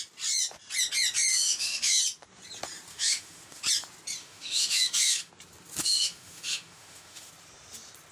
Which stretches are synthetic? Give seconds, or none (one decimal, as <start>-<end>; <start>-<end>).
1.3-2.0; 2.9-3.6; 4.2-5.3; 5.8-7.3